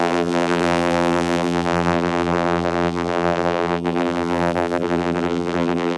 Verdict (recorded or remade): remade